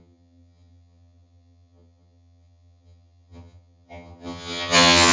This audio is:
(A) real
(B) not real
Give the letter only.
B